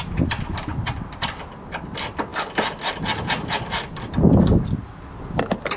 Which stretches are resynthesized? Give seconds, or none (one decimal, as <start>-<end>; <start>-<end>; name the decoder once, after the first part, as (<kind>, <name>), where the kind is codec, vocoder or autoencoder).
none